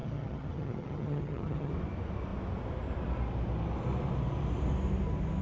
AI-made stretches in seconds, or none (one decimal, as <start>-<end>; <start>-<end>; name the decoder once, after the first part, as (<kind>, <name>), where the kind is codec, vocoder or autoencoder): 0.0-1.7 (vocoder, HiFi-GAN)

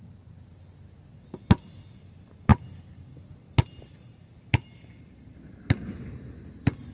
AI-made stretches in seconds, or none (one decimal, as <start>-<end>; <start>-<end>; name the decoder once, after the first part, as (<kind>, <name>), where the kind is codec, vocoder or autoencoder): none

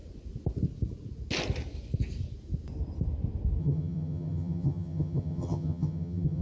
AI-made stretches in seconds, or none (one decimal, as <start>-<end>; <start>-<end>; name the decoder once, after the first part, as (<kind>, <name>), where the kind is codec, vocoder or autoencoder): 3.6-6.4 (vocoder, HiFi-GAN)

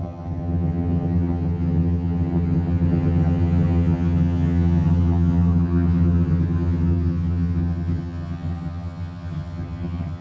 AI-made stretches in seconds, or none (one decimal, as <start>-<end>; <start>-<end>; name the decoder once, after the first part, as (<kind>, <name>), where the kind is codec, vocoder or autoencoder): 0.0-10.2 (vocoder, HiFi-GAN)

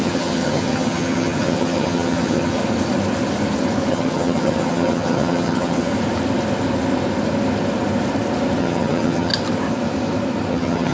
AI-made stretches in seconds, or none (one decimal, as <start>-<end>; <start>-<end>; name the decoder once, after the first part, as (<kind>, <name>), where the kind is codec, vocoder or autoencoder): 0.0-2.6 (vocoder, HiFi-GAN); 3.9-5.9; 8.6-9.3; 10.5-10.9

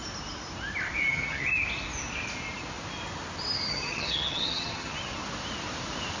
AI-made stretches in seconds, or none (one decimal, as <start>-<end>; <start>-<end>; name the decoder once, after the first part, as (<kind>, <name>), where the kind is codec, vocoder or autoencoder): 1.1-1.5 (vocoder, HiFi-GAN); 3.7-5.2

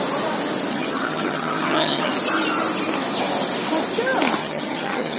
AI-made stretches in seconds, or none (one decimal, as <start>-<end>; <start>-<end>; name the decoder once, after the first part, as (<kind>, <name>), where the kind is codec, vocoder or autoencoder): 0.7-2.1 (vocoder, HiFi-GAN); 4.4-5.2